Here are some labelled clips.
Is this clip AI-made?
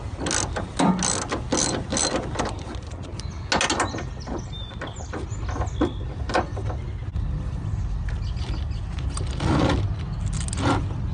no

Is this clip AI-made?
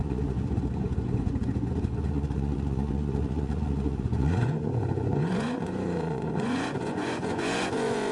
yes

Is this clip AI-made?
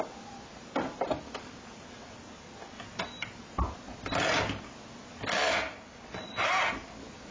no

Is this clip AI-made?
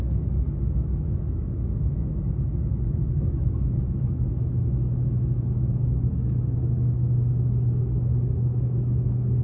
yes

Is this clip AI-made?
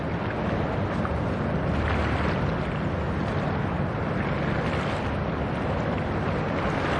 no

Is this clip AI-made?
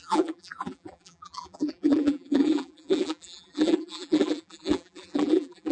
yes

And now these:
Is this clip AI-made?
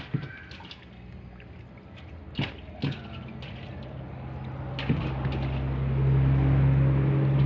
no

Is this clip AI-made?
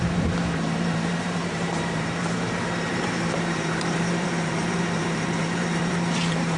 yes